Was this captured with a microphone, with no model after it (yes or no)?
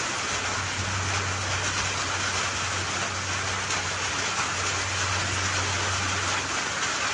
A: yes